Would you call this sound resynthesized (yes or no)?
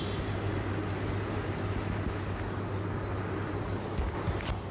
no